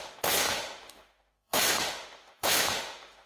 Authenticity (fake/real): fake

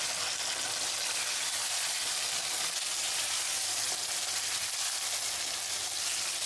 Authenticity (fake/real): real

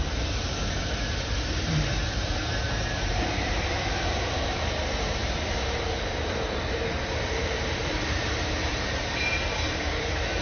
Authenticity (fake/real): fake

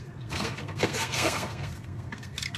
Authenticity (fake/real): fake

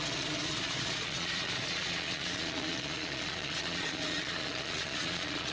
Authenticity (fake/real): fake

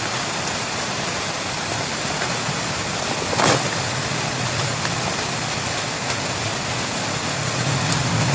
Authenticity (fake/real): real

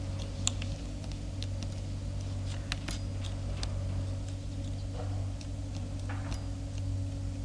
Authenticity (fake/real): real